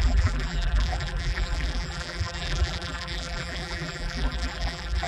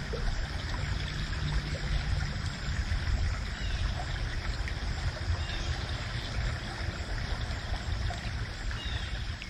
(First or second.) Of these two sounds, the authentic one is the second